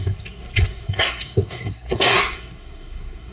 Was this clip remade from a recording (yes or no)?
yes